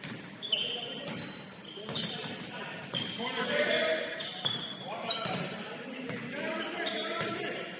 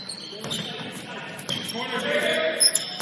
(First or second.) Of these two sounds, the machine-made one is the first